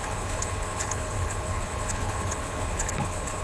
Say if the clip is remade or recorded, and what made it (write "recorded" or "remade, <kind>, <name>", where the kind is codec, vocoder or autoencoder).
remade, codec, HILCodec